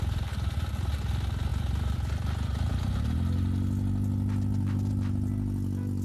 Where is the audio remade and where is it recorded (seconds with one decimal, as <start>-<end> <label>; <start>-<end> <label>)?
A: 0.0-6.0 recorded